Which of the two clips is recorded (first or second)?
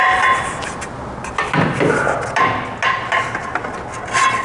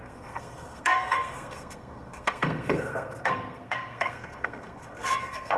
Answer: first